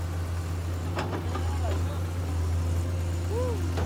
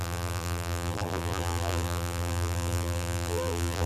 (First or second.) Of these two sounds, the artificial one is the second